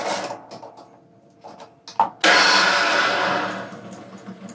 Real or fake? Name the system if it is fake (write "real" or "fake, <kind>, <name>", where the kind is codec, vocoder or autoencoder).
real